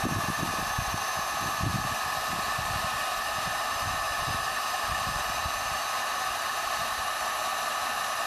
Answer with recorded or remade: remade